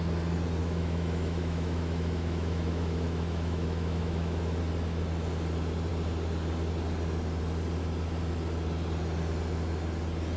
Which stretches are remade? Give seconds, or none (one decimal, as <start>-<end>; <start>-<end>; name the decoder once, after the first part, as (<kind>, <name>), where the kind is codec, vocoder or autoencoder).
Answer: 0.6-4.6 (autoencoder, DAC-VAE)

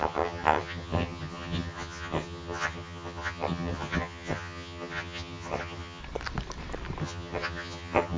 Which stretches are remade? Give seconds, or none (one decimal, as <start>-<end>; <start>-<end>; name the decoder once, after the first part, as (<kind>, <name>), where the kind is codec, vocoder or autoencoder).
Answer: 0.0-6.0 (vocoder, HiFi-GAN); 7.0-8.2

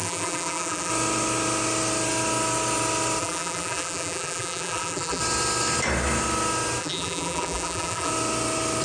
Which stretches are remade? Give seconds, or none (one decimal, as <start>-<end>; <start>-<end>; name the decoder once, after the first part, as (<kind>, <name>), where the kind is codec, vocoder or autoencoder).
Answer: 0.0-0.9 (vocoder, BigVGAN v2); 3.2-5.2; 6.8-8.1

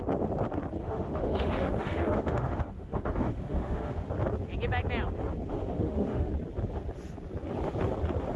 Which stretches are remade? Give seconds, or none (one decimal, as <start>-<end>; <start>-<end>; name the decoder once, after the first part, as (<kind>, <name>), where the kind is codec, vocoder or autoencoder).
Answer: 0.8-4.1 (autoencoder, DAC-VAE); 5.5-6.3

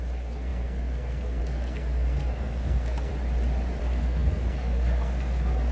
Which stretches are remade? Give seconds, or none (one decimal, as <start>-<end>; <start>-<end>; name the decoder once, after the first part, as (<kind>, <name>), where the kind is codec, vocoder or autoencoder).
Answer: 0.0-3.1 (codec, SNAC); 3.8-5.7

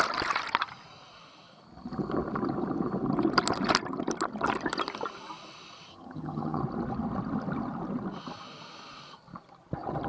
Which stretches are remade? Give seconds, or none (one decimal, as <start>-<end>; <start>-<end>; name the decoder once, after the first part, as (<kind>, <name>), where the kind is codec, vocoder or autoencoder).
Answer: 5.9-6.6 (vocoder, HiFi-GAN)

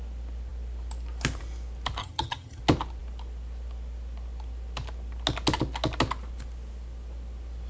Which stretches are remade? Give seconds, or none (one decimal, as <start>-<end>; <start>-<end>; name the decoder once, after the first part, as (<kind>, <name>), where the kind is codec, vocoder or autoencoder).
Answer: 2.0-2.6 (vocoder, HiFi-GAN)